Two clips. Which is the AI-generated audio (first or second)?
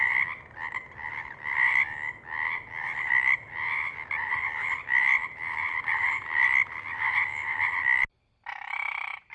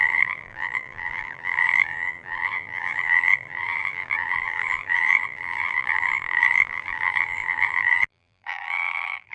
second